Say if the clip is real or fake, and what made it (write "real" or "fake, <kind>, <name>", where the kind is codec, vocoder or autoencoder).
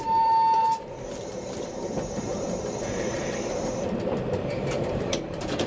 fake, vocoder, BigVGAN v2